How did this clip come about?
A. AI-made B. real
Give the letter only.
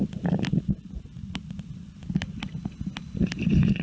B